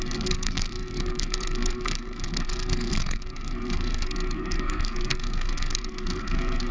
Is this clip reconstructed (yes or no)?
yes